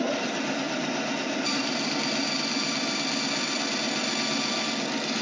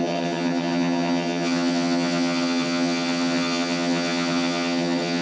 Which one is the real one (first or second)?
first